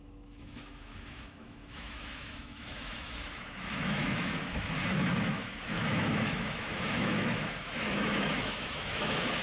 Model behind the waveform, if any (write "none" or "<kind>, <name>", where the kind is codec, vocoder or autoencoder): autoencoder, DAC-VAE